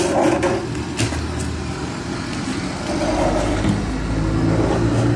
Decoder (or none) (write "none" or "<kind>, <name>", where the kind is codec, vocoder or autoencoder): none